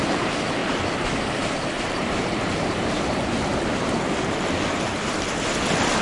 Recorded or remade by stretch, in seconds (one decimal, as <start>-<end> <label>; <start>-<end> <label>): 0.0-0.6 remade; 0.6-1.8 recorded; 1.8-3.5 remade; 3.5-6.0 recorded

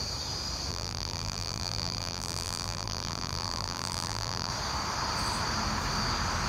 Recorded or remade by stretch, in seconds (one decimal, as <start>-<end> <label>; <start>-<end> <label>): 0.0-0.7 recorded; 0.7-4.5 remade; 4.5-6.5 recorded